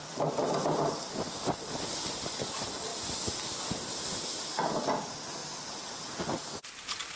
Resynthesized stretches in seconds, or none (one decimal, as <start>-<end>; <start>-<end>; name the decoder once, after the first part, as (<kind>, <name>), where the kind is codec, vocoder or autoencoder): none